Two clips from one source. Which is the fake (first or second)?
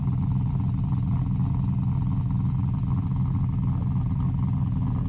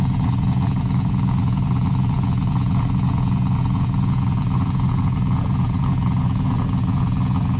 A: second